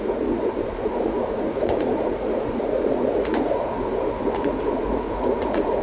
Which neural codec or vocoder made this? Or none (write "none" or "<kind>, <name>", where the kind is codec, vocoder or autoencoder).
vocoder, Vocos